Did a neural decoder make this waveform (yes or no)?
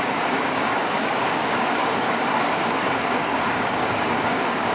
yes